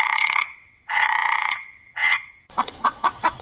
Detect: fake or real fake